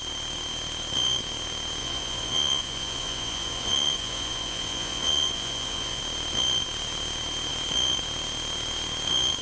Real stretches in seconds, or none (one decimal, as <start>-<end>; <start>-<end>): 0.0-1.8; 6.0-9.4